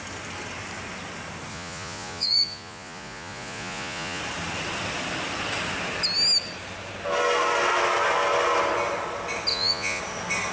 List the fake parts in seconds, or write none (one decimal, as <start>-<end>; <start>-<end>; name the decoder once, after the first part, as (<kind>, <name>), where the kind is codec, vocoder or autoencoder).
1.5-4.2 (vocoder, Vocos); 9.5-10.0